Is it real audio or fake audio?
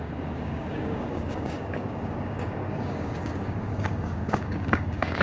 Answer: fake